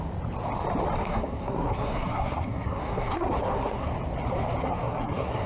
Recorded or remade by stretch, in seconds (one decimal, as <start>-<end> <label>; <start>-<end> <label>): 0.0-1.0 recorded; 1.0-3.9 remade; 3.9-4.6 recorded; 4.6-5.5 remade